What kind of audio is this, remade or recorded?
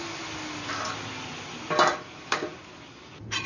recorded